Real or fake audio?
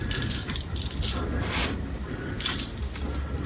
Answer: real